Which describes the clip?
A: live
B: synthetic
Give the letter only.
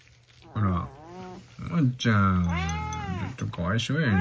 A